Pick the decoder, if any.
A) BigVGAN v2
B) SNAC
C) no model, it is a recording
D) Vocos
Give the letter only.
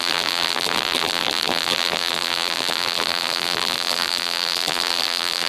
A